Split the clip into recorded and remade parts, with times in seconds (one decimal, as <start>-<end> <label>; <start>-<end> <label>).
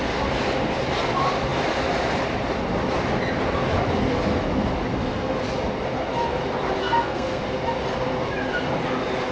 0.0-4.9 recorded; 4.9-5.4 remade; 5.4-6.8 recorded; 6.8-7.4 remade; 7.4-9.3 recorded